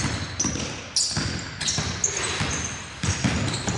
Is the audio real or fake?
real